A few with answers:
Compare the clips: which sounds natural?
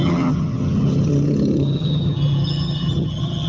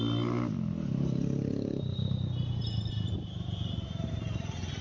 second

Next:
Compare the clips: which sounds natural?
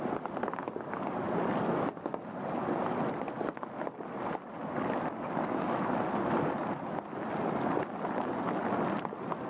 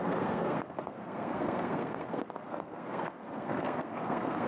first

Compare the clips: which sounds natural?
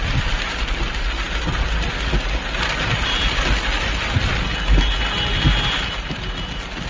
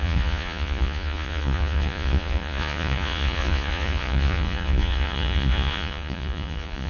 first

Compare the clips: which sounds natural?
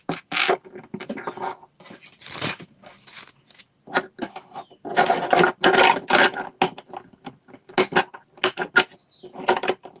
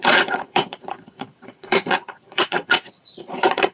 first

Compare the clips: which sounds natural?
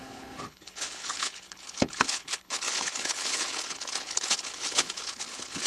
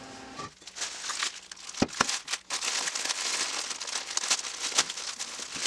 second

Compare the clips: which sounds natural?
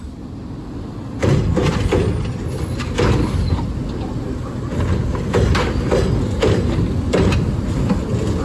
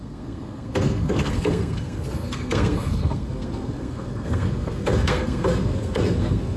first